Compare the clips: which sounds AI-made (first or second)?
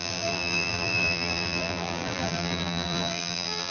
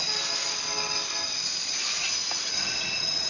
first